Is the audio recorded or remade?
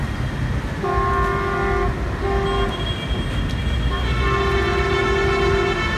recorded